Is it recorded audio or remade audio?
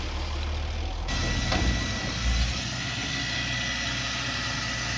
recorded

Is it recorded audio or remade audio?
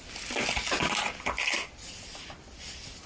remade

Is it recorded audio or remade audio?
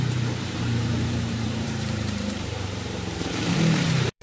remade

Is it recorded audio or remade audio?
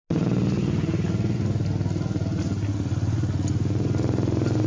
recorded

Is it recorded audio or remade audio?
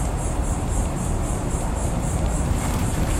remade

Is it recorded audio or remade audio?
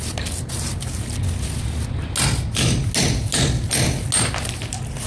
recorded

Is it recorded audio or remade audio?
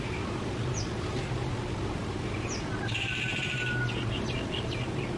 remade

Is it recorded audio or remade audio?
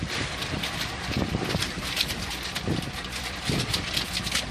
remade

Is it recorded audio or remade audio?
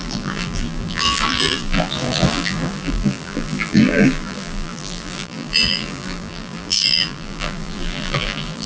remade